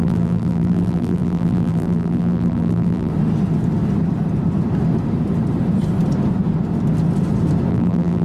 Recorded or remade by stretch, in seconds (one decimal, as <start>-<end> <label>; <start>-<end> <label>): 0.0-3.1 remade; 3.1-7.7 recorded; 7.7-8.2 remade

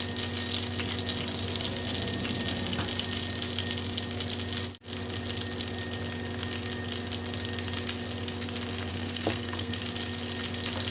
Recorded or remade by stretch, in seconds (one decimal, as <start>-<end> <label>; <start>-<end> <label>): 0.0-8.9 recorded; 8.9-9.8 remade; 9.8-10.9 recorded